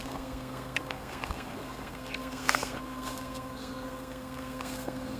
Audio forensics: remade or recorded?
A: remade